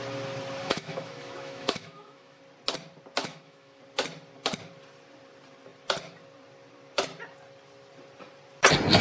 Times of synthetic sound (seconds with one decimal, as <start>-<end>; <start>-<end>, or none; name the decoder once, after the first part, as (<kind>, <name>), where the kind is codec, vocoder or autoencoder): 0.6-2.4 (autoencoder, DAC-VAE); 3.2-3.8